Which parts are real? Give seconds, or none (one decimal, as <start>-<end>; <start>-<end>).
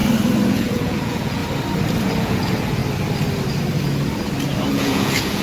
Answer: 0.0-0.5; 1.4-2.2; 2.8-4.7